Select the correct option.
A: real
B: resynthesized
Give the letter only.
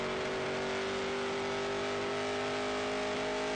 A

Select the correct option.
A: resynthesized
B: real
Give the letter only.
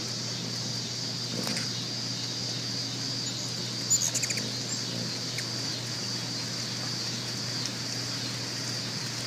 B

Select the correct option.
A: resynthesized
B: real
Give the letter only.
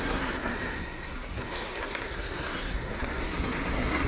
A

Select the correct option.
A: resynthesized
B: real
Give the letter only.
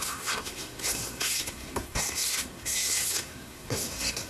A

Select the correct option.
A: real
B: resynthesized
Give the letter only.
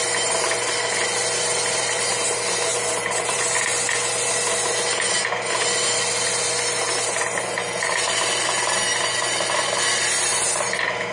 A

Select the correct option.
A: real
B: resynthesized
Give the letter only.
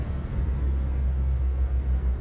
B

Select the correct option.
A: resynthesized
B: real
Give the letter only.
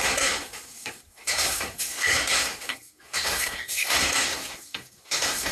A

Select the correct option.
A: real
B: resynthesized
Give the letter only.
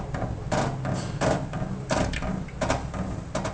A